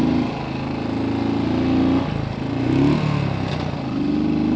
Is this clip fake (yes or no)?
no